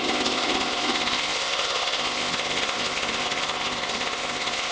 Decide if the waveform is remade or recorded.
remade